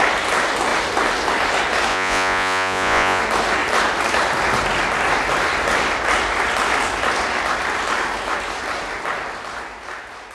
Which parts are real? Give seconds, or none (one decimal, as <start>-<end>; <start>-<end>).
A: 0.0-1.9; 3.2-10.3